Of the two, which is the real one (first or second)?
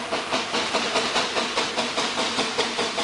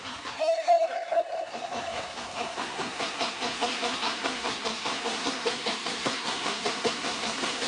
first